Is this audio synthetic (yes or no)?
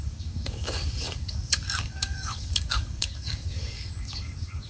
yes